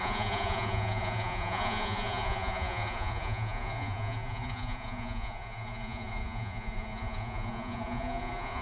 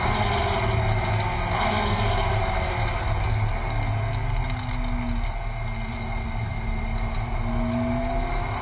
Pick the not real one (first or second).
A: first